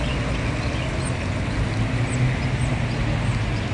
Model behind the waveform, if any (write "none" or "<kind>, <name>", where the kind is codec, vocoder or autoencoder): none